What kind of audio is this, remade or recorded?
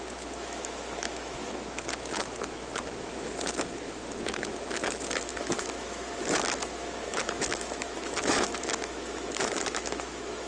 remade